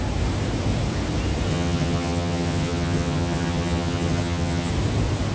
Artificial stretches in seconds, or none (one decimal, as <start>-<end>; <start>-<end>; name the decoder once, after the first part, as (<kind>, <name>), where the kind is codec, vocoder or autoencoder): 1.5-4.7 (vocoder, HiFi-GAN)